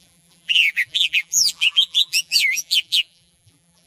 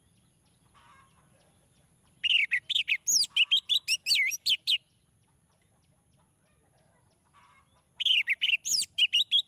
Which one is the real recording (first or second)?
second